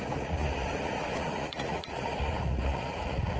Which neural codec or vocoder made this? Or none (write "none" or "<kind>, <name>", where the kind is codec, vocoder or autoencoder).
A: vocoder, Vocos